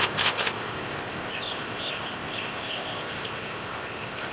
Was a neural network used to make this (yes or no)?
yes